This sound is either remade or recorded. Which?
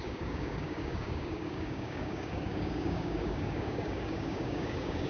remade